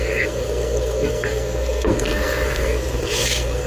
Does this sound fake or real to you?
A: fake